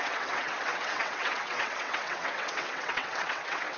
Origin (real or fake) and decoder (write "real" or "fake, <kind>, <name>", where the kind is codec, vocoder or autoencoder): fake, vocoder, WaveNeXt